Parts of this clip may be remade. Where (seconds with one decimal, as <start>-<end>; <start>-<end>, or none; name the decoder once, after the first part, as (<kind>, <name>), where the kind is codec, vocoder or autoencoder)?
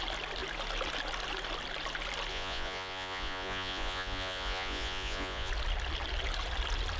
2.3-5.5 (vocoder, Vocos)